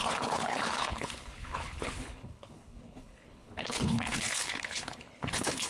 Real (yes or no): no